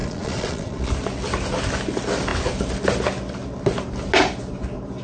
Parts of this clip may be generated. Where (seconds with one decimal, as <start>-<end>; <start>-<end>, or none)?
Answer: 0.0-0.9